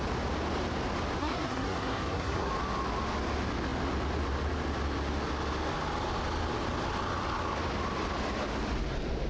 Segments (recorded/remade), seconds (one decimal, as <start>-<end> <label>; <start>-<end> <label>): 0.0-1.2 recorded; 1.2-2.5 remade; 2.5-9.3 recorded